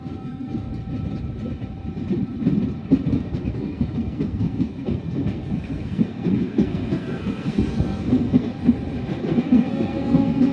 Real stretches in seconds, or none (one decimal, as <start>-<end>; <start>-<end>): 0.7-3.1; 8.5-9.2